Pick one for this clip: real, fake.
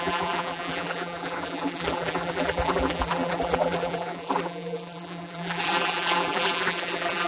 fake